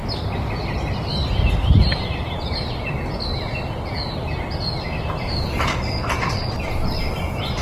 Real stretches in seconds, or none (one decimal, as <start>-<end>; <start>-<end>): 0.0-3.3; 4.1-7.6